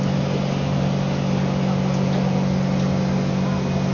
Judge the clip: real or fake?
real